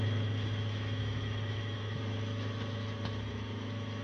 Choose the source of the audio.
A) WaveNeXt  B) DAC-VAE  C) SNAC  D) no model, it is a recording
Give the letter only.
B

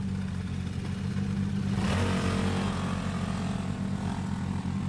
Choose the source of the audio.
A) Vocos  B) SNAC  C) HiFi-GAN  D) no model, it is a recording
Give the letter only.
D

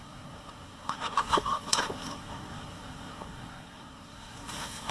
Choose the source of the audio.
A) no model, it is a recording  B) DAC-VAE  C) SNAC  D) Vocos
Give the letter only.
C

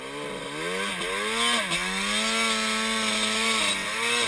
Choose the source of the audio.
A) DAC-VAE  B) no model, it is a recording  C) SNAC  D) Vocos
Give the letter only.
B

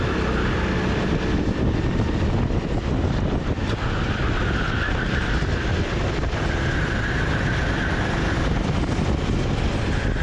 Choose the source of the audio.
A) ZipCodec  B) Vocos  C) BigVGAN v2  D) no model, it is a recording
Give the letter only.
D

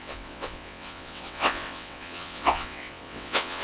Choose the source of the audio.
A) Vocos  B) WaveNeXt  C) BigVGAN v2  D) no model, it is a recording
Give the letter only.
B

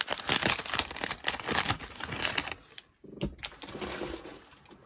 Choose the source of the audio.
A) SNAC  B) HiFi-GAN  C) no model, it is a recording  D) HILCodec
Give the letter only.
C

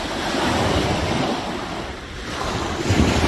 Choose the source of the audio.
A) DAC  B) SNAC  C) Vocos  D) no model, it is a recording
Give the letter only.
D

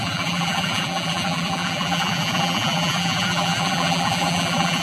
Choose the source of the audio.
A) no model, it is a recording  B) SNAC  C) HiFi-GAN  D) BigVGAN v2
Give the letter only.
D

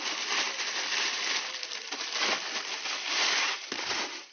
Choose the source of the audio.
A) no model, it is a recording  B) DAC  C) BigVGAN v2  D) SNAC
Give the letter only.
C